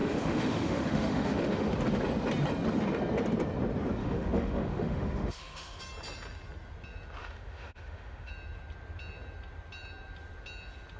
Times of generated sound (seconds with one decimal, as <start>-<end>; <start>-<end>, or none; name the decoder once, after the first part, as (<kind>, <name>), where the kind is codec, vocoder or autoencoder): 0.0-1.7 (autoencoder, DAC-VAE); 4.0-5.8; 7.2-8.3